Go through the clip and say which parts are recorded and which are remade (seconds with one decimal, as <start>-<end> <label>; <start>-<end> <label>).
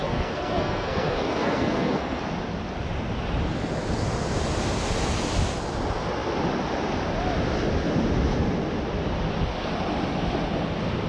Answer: 0.0-2.2 remade; 2.2-11.1 recorded